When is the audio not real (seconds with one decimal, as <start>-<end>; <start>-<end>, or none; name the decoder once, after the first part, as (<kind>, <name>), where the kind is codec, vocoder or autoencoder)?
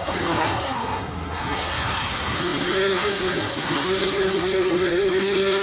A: 0.0-5.6 (codec, SNAC)